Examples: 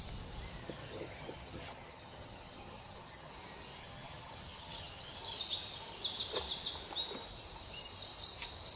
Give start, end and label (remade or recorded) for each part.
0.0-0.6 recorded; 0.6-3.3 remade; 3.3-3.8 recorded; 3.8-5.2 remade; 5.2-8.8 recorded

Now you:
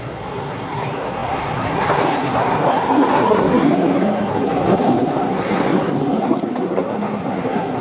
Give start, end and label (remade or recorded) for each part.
0.0-7.8 remade

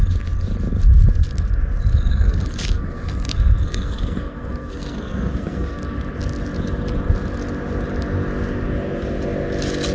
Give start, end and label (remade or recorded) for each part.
0.0-2.1 recorded; 2.1-5.8 remade; 5.8-9.9 recorded

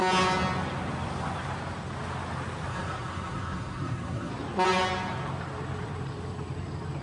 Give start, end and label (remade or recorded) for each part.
0.0-2.7 recorded; 2.7-4.3 remade; 4.3-7.0 recorded

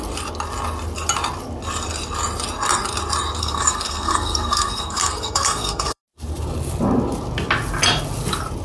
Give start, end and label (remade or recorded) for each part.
0.0-3.4 recorded; 3.4-6.0 remade; 6.0-8.6 recorded